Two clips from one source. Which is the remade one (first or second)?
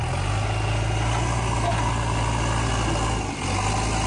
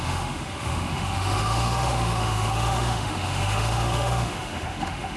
second